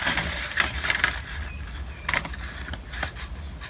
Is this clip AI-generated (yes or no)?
no